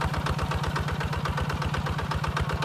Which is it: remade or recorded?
recorded